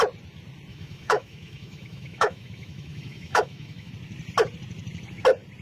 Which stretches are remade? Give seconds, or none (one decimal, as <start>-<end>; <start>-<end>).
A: 0.7-3.9